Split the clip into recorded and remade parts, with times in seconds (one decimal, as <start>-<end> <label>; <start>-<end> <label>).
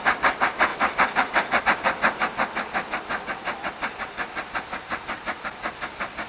0.0-6.3 recorded